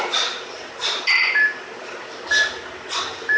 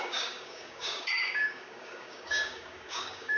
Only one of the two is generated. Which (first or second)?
second